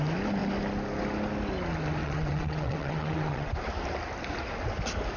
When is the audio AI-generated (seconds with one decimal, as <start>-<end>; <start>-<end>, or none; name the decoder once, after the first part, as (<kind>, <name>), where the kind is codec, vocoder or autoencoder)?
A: 2.0-3.5 (vocoder, WaveNeXt)

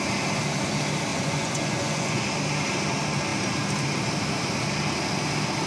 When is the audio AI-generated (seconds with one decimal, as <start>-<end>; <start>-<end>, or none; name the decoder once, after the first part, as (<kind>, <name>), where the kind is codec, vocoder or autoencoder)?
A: 1.1-2.2 (vocoder, Vocos)

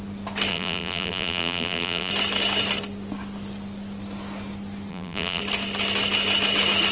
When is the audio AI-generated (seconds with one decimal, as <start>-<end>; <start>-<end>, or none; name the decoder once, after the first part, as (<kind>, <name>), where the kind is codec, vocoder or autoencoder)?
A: 0.5-2.1 (vocoder, BigVGAN v2); 4.9-5.4

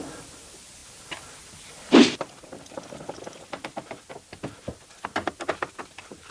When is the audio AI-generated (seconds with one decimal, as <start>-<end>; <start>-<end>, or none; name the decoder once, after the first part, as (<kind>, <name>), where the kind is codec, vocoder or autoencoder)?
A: none

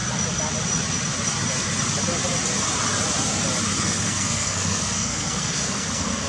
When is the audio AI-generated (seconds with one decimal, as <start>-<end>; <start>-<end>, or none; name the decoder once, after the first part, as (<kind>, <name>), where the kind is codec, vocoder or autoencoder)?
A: 3.8-6.3 (codec, SNAC)